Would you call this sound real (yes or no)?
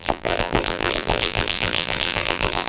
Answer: no